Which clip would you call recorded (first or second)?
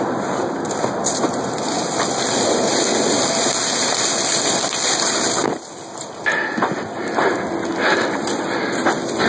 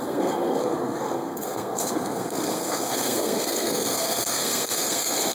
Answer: first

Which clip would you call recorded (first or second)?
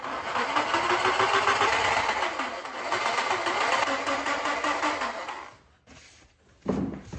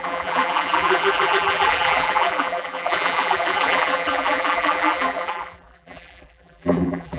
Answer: first